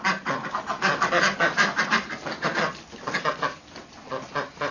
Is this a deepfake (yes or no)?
no